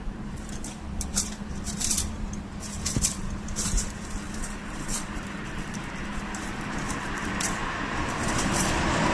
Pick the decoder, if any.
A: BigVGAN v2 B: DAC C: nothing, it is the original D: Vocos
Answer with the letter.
A